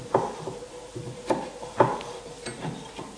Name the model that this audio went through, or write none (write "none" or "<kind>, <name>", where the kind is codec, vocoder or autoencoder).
none